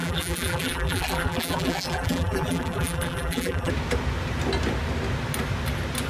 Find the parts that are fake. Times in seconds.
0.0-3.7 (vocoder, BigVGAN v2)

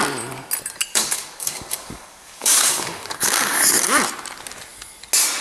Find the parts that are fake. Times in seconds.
0.9-3.7 (codec, DAC)

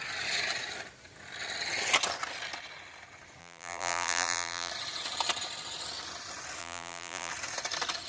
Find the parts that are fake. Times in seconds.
3.4-4.7 (vocoder, BigVGAN v2); 6.6-7.3

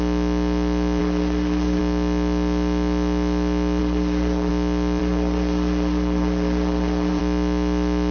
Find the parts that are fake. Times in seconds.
1.0-1.8 (codec, SNAC); 3.8-4.5; 5.0-7.2